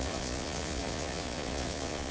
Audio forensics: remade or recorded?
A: remade